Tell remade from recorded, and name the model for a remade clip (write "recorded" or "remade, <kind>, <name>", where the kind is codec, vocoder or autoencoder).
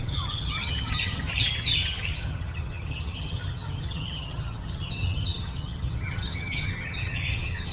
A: remade, vocoder, HiFi-GAN